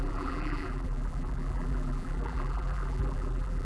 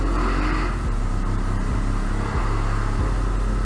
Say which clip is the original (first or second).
second